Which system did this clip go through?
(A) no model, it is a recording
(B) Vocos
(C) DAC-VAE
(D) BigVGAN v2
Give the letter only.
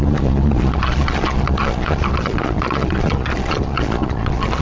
B